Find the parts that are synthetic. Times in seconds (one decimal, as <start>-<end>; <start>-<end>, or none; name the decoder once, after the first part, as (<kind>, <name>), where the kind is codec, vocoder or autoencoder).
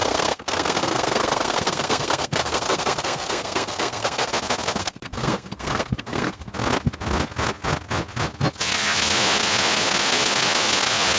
0.0-4.3 (codec, SNAC); 4.8-6.5